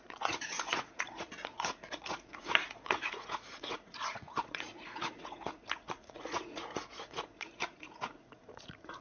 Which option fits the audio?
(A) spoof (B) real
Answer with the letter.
A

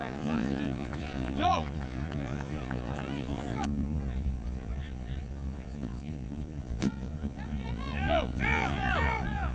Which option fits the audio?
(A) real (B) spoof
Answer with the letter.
B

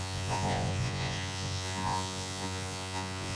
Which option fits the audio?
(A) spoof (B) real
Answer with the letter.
A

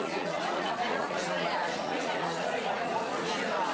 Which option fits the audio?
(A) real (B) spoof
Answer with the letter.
B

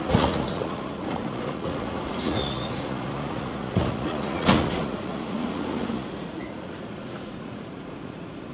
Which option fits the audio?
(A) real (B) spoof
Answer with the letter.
B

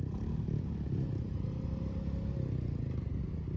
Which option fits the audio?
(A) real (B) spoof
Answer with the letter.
A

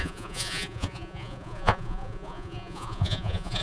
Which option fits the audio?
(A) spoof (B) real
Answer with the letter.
A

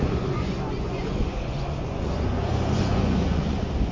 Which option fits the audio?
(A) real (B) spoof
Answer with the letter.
B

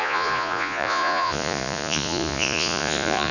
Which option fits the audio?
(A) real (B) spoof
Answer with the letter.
B